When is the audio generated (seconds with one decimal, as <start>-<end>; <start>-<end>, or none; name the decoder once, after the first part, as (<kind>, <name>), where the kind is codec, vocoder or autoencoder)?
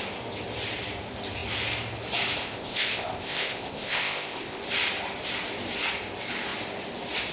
2.4-4.6 (codec, ZipCodec)